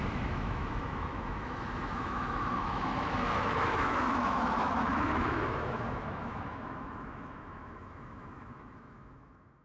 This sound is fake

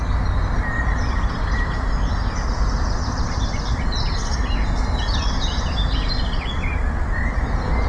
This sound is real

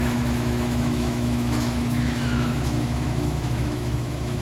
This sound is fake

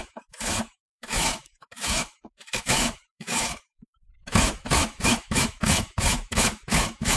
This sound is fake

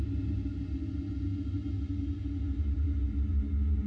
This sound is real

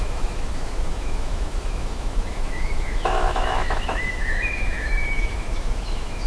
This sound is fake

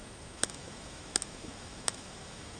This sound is fake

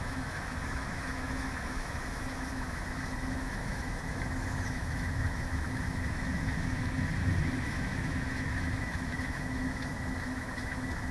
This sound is fake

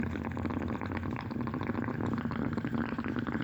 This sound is real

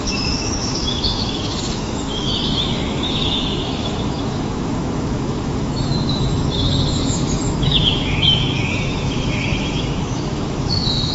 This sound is fake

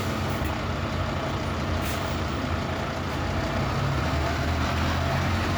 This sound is real